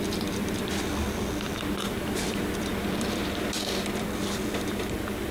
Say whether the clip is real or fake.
fake